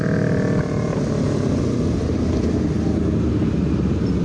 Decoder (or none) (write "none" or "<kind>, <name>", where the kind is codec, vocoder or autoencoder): none